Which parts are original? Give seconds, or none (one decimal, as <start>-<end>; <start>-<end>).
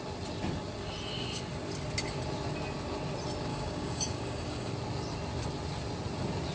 0.0-3.5; 4.7-6.5